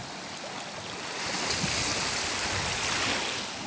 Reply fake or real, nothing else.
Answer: real